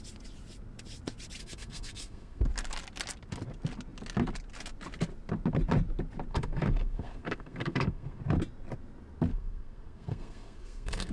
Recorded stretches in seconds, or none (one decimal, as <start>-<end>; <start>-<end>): 0.0-1.4; 2.4-6.3; 8.2-9.3